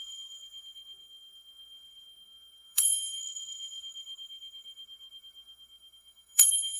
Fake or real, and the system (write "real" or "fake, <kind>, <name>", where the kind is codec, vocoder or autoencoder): fake, codec, SNAC